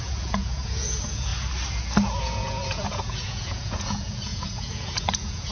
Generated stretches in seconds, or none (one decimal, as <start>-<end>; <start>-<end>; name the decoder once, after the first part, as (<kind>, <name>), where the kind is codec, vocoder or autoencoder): 0.0-1.3 (vocoder, Vocos); 2.2-5.5